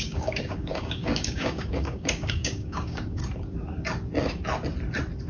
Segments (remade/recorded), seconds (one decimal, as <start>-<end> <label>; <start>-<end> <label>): 0.0-3.2 remade; 3.2-5.3 recorded